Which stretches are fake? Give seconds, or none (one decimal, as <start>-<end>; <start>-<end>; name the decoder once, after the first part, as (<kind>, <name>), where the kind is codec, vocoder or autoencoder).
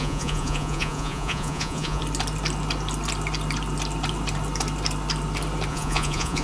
0.0-2.0 (vocoder, Vocos); 5.7-6.4